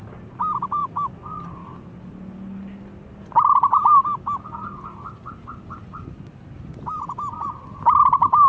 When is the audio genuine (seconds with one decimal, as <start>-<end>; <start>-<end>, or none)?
0.0-8.5